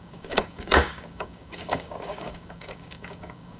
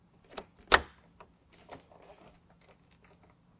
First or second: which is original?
second